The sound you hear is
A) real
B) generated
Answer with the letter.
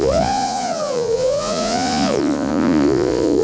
B